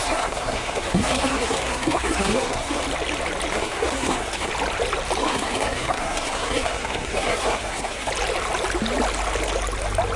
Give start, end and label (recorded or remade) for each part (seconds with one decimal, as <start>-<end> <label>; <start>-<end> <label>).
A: 0.0-2.8 remade; 2.8-3.5 recorded; 3.5-4.5 remade; 4.5-5.2 recorded; 5.2-8.1 remade; 8.1-10.2 recorded

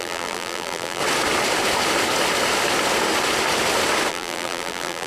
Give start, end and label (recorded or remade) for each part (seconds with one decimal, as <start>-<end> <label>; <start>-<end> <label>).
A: 0.0-1.0 remade; 1.0-4.1 recorded; 4.1-5.1 remade

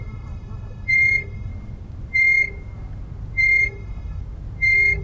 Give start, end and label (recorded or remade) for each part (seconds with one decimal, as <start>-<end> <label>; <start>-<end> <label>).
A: 0.0-1.5 remade; 1.5-3.6 recorded; 3.6-4.2 remade; 4.2-5.0 recorded

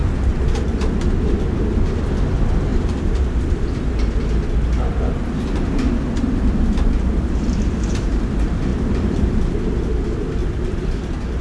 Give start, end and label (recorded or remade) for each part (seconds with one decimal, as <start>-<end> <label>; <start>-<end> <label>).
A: 0.0-0.7 remade; 0.7-2.7 recorded; 2.7-3.9 remade; 3.9-8.7 recorded; 8.7-9.4 remade; 9.4-10.4 recorded; 10.4-11.4 remade

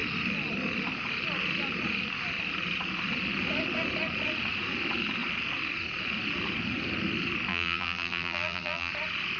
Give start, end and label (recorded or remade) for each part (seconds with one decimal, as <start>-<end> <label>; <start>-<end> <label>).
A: 0.0-7.5 recorded; 7.5-8.9 remade; 8.9-9.4 recorded

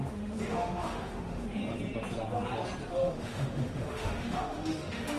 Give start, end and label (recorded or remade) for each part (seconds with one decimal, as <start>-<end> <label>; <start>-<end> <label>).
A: 0.0-1.6 remade; 1.6-2.9 recorded; 2.9-5.2 remade

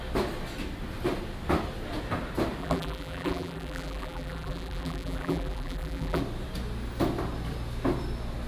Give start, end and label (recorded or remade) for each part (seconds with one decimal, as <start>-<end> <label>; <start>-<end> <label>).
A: 0.0-2.6 recorded; 2.6-6.2 remade; 6.2-8.5 recorded

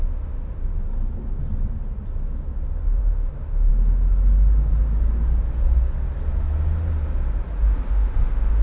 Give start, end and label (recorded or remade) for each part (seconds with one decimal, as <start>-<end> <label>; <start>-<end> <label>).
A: 0.0-0.6 remade; 0.6-3.0 recorded; 3.0-3.7 remade; 3.7-7.9 recorded; 7.9-8.6 remade